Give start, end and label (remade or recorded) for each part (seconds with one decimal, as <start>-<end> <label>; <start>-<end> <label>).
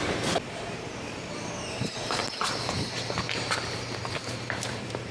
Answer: 0.0-2.2 remade; 2.2-4.3 recorded; 4.3-5.1 remade